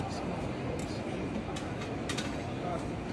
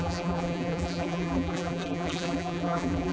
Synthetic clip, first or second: second